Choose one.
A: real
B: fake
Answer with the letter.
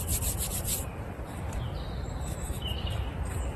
B